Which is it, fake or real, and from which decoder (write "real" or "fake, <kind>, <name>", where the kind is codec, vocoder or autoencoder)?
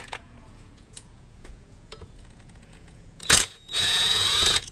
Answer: fake, vocoder, Vocos